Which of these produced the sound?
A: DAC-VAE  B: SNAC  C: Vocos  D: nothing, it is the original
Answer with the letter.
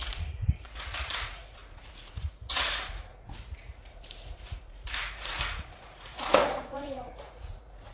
C